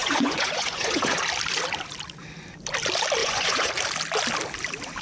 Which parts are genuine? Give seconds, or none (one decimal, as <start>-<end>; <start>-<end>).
1.2-3.2; 3.7-5.0